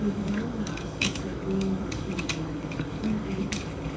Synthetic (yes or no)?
yes